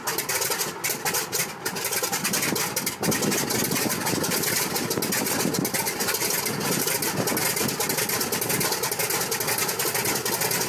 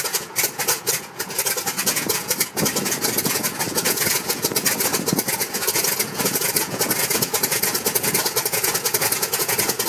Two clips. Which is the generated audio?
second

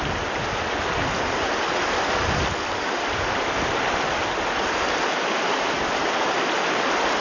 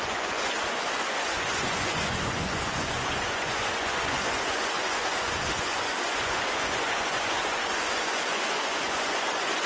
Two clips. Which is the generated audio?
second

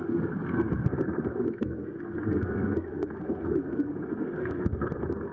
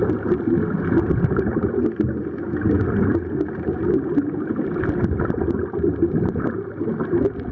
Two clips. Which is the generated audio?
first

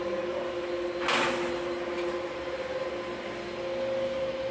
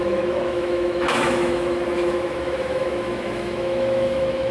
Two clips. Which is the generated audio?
second